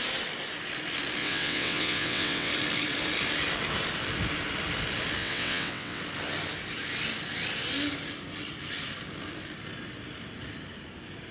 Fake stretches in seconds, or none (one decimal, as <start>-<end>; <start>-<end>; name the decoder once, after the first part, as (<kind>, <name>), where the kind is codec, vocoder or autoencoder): 1.2-2.5 (vocoder, WaveNeXt); 5.2-6.0